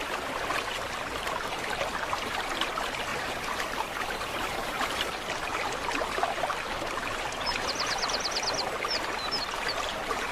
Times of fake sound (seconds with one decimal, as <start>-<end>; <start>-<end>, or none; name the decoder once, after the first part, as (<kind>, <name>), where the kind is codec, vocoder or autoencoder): 3.1-5.0 (vocoder, BigVGAN v2)

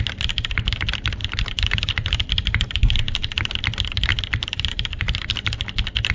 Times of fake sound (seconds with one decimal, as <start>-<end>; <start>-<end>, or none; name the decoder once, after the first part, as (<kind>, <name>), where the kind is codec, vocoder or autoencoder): 1.2-3.0 (vocoder, BigVGAN v2); 4.1-5.2